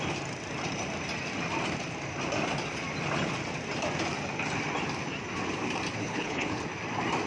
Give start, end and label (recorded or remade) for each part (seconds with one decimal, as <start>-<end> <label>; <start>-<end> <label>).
0.0-6.0 recorded; 6.0-6.6 remade; 6.6-7.3 recorded